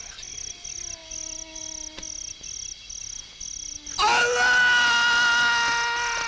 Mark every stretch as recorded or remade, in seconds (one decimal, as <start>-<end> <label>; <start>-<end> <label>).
0.0-6.3 recorded